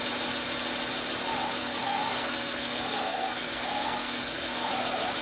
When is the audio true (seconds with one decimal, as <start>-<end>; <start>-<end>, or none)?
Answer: 0.0-1.6; 4.7-5.2